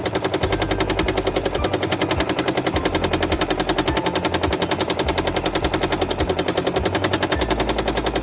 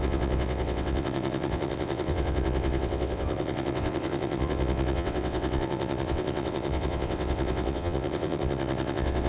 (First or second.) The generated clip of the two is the second